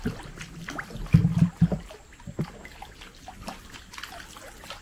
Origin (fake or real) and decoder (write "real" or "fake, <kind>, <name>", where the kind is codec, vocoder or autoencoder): real